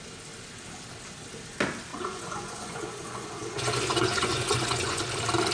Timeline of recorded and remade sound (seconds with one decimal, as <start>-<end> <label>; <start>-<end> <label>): 0.0-1.9 recorded; 1.9-5.0 remade; 5.0-5.5 recorded